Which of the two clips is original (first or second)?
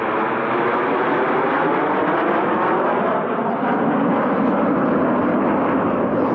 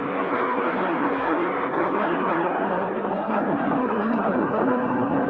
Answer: first